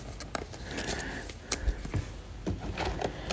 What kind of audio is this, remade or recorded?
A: recorded